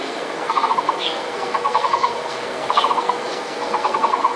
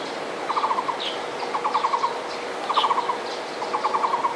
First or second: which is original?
second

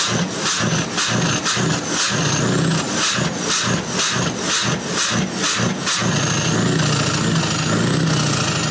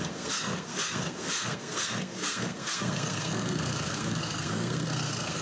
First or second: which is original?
first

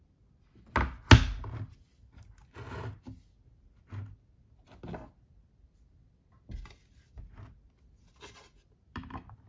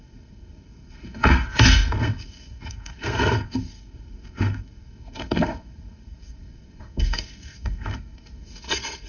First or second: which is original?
first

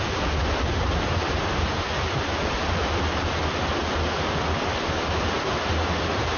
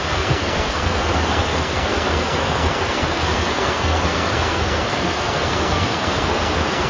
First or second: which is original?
first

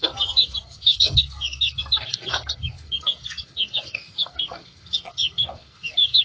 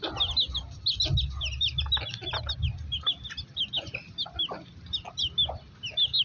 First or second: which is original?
second